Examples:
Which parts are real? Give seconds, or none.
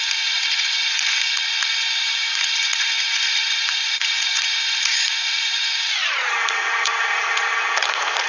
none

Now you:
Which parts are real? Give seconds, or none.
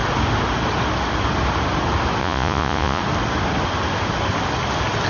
0.0-2.2; 3.0-5.1